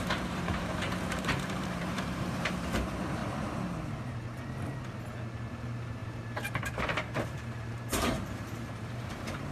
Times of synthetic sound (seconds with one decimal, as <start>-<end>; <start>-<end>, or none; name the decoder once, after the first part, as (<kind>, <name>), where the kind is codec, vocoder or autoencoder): 0.0-3.2 (vocoder, BigVGAN v2); 5.5-9.5